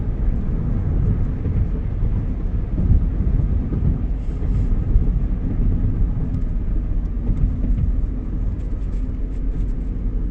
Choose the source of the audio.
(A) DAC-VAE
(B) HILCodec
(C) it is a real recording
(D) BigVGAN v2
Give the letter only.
C